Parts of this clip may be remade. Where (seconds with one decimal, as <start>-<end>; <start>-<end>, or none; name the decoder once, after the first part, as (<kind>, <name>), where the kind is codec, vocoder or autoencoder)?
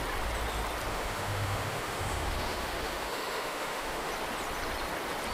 0.9-4.1 (autoencoder, DAC-VAE)